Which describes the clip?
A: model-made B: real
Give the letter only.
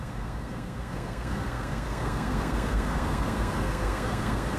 A